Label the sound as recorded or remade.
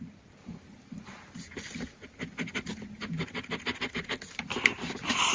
recorded